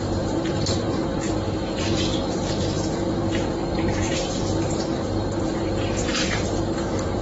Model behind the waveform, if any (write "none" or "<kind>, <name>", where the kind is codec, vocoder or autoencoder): vocoder, BigVGAN v2